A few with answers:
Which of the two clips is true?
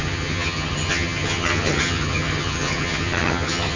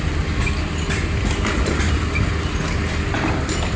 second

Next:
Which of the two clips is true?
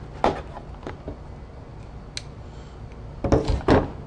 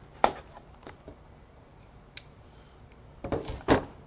first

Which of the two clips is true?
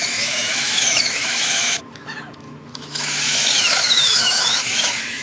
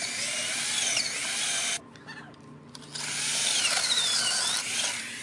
second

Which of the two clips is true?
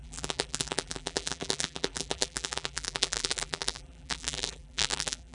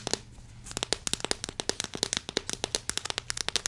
second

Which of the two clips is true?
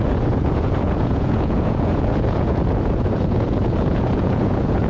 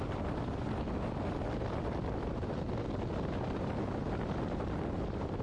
second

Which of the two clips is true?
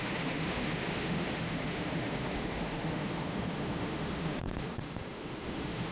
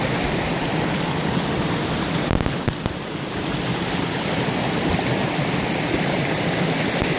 second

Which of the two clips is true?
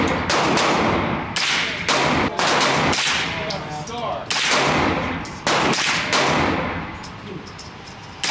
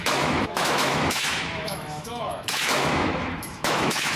first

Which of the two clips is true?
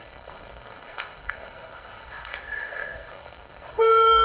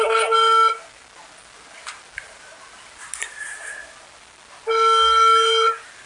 second